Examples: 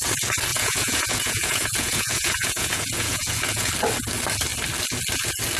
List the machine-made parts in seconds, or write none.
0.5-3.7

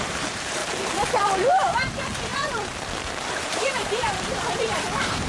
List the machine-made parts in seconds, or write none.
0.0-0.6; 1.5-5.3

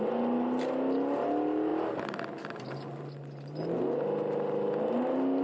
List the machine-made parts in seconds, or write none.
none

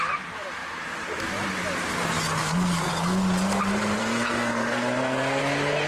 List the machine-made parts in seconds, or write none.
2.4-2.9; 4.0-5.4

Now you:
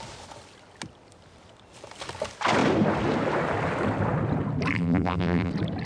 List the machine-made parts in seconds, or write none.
4.7-5.5

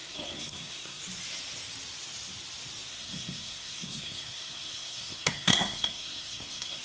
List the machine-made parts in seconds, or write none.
0.0-1.0; 2.9-6.8

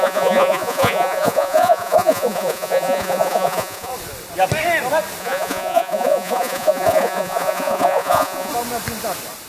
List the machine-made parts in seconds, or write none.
0.0-3.9; 5.2-8.5